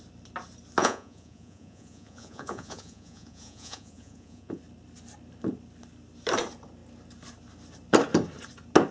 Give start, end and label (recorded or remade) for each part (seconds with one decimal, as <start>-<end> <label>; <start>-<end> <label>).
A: 0.0-0.8 recorded; 0.8-4.6 remade; 4.6-8.9 recorded